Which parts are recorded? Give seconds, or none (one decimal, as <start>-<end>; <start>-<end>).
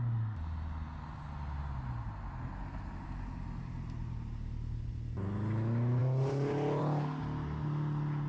0.0-8.3